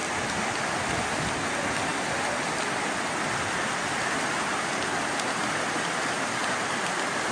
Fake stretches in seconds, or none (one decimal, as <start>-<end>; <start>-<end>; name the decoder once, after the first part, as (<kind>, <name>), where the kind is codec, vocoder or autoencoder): none